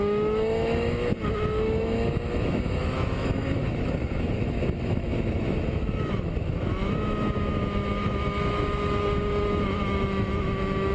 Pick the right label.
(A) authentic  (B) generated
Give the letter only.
B